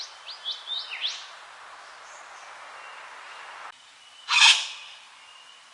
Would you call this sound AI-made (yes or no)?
no